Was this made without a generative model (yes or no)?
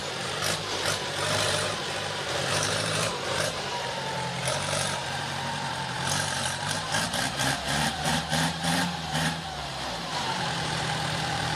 no